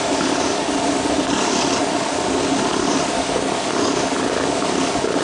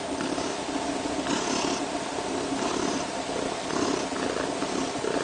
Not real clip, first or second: first